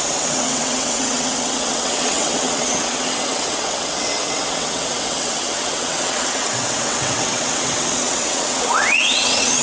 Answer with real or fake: fake